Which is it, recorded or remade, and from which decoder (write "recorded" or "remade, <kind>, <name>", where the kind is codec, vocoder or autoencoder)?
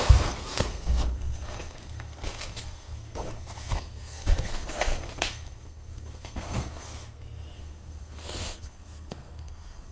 remade, codec, SNAC